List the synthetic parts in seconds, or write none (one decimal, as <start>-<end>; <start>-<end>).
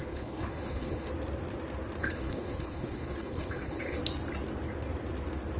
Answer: 0.0-1.1; 2.0-4.0